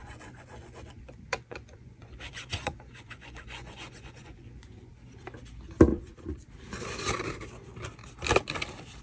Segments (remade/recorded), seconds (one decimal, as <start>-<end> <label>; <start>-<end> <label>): 0.0-4.9 remade; 4.9-5.9 recorded; 5.9-6.5 remade; 6.5-9.0 recorded